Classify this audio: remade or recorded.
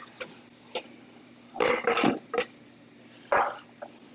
recorded